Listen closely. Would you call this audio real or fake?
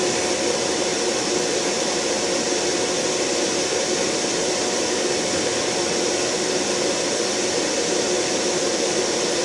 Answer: real